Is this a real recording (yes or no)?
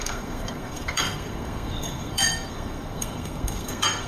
no